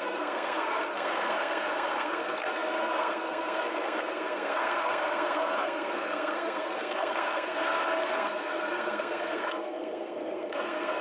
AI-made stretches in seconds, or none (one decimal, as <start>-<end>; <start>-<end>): 0.0-11.0